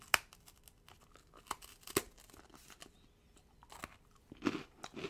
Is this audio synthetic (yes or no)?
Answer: no